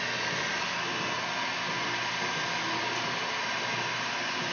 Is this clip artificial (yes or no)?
no